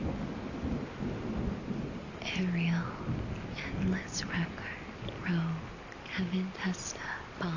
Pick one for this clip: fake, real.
real